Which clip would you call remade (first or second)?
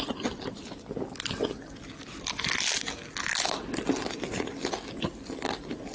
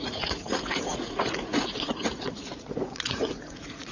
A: second